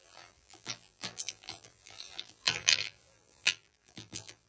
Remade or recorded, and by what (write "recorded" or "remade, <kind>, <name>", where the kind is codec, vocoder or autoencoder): remade, vocoder, BigVGAN v2